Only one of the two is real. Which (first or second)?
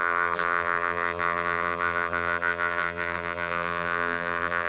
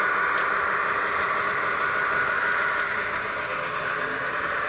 second